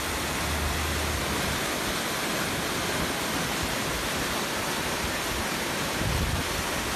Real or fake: real